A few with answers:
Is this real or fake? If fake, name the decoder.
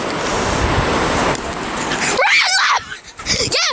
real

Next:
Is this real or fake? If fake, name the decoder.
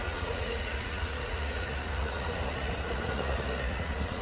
fake, vocoder, Vocos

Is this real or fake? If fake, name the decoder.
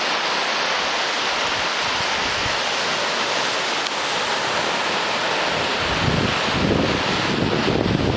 real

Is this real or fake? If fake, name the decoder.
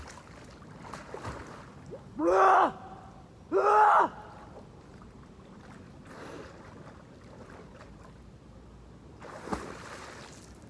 real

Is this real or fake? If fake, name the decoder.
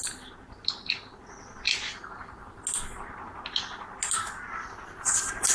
real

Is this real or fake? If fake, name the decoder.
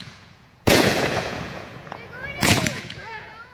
fake, vocoder, Vocos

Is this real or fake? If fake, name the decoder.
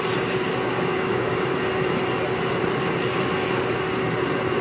real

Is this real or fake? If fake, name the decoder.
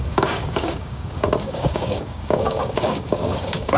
fake, codec, DAC